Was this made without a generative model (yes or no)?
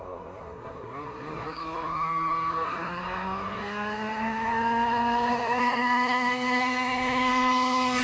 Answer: no